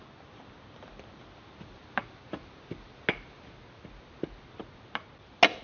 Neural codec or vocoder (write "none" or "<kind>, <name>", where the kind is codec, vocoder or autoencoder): none